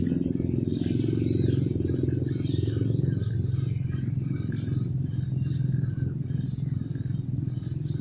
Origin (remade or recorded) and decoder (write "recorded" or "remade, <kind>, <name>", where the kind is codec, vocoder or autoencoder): recorded